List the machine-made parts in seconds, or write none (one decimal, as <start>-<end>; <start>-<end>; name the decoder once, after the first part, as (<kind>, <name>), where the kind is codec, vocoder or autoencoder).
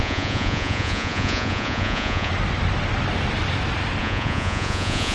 0.0-2.3 (vocoder, Vocos); 4.0-5.1